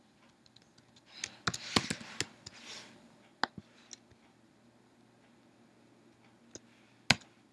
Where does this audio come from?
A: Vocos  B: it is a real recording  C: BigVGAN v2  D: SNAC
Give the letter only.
B